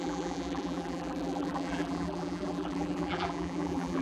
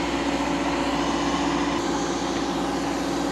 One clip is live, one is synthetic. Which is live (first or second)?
second